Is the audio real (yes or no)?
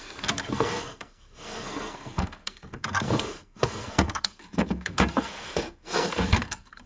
no